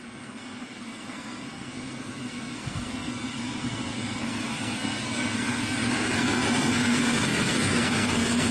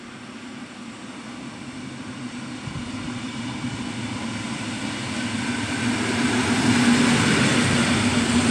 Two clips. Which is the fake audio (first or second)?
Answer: first